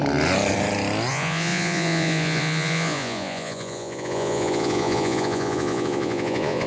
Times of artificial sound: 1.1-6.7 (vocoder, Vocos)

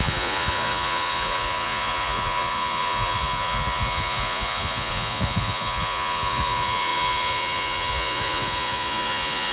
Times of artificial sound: 0.0-9.5 (vocoder, Vocos)